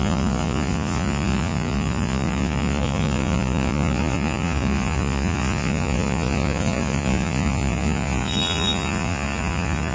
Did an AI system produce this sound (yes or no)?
yes